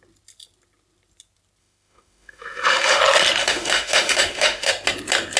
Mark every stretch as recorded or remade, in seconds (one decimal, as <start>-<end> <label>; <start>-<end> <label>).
0.0-1.6 recorded; 1.6-3.0 remade; 3.0-3.4 recorded; 3.4-4.7 remade; 4.7-5.4 recorded